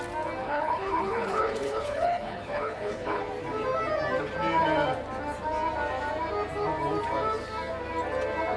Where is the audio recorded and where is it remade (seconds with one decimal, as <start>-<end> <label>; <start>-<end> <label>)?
0.0-0.4 recorded; 0.4-3.2 remade; 3.2-8.6 recorded